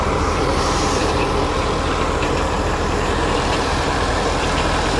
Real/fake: fake